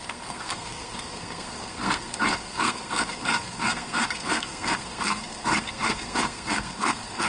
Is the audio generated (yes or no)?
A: yes